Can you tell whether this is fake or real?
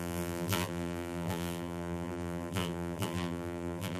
fake